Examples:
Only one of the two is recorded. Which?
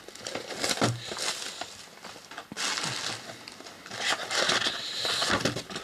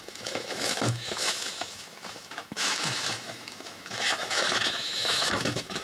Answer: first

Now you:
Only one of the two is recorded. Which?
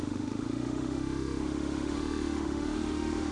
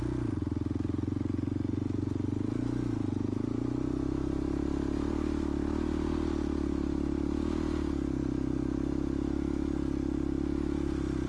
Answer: second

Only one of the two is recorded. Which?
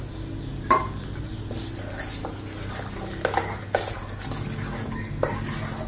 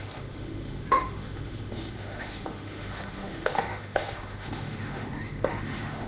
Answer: first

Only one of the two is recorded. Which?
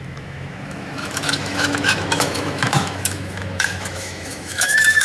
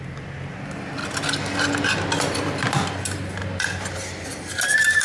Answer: second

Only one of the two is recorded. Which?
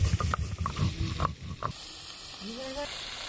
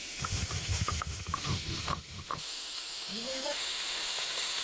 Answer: first